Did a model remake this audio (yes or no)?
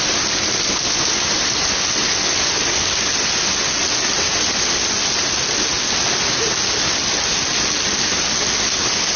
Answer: no